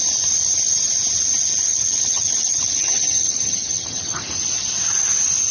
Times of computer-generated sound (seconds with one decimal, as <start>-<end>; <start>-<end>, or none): 1.7-4.3